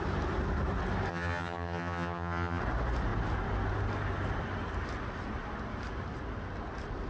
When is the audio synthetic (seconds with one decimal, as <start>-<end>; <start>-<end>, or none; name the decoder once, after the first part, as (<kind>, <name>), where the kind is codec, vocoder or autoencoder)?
1.1-2.6 (vocoder, HiFi-GAN)